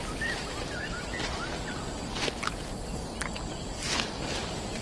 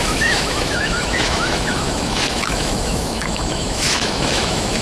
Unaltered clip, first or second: first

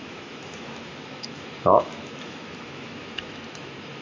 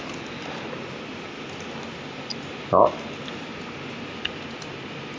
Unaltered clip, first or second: second